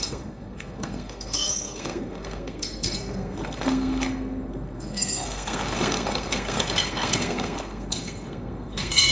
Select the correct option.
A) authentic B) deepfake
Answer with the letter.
B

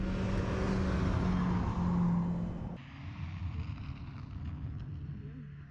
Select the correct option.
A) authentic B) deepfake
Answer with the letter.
A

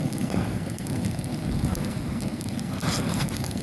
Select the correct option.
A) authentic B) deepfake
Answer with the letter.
B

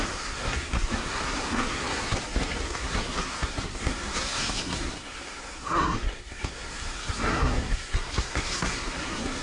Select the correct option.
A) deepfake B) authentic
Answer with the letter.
A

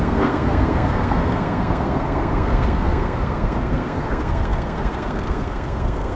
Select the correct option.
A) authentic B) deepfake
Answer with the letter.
B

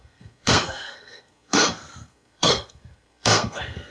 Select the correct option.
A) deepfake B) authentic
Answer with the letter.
A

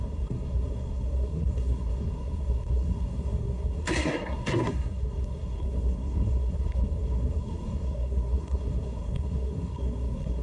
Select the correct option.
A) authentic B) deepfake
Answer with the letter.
B